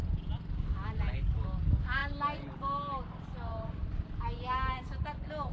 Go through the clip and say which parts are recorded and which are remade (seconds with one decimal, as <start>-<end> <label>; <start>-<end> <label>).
0.0-5.5 recorded